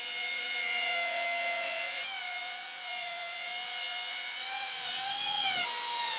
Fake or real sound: fake